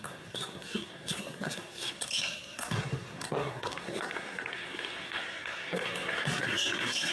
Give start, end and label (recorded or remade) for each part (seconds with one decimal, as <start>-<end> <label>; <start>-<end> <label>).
0.0-7.1 remade